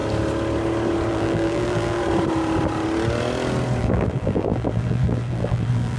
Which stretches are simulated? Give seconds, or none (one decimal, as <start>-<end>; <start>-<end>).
1.1-2.0; 3.8-6.0